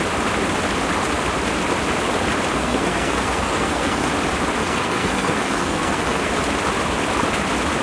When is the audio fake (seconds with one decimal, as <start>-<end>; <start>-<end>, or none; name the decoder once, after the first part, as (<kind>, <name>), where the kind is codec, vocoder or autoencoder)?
2.5-4.1 (codec, SNAC); 4.6-6.3